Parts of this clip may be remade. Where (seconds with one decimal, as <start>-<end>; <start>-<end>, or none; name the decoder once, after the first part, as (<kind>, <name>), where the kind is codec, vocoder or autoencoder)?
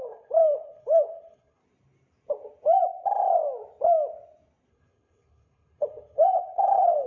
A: 0.0-1.6 (codec, HILCodec); 4.7-7.1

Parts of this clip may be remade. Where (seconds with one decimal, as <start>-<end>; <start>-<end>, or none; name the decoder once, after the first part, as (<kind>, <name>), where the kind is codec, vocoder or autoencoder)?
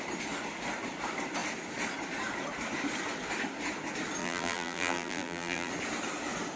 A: 4.2-5.7 (vocoder, BigVGAN v2)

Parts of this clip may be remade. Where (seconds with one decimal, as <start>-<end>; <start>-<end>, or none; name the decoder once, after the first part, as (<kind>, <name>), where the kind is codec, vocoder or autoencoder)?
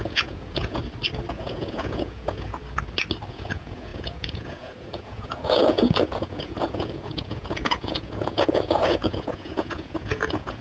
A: 0.0-0.8 (vocoder, Vocos); 1.3-2.6; 3.3-10.6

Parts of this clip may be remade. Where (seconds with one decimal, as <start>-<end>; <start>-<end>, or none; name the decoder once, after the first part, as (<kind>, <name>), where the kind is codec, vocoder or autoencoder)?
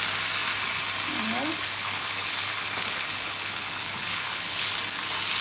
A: 1.5-4.7 (codec, HILCodec)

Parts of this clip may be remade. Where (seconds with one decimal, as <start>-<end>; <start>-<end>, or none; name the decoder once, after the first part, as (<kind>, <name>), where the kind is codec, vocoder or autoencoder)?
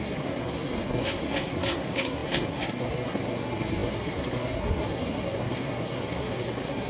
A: 0.0-6.9 (codec, SNAC)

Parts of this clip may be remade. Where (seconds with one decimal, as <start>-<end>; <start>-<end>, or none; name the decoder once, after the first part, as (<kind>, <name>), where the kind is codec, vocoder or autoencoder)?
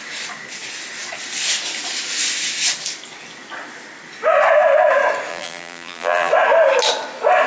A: 5.3-6.3 (vocoder, BigVGAN v2)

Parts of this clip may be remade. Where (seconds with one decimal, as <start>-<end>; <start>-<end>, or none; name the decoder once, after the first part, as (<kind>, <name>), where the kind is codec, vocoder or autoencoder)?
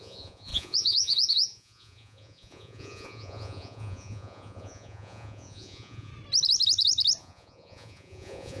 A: 0.0-6.1 (vocoder, Vocos); 7.2-8.6